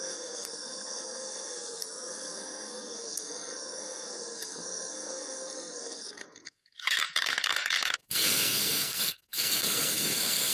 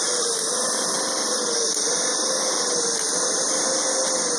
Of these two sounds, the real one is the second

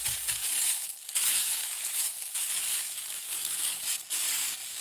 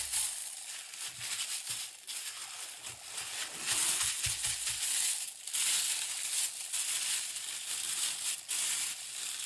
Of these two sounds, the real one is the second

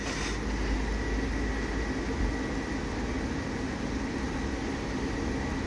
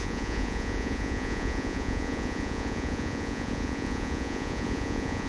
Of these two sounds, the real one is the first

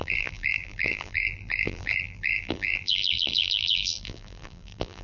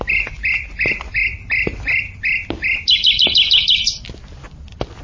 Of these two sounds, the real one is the second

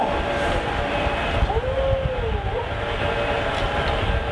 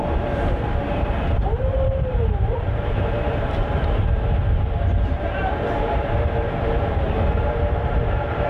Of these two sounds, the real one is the first